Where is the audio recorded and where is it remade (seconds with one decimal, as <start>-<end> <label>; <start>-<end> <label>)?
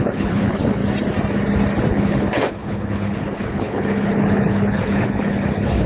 0.0-0.8 remade; 0.8-1.9 recorded; 1.9-5.9 remade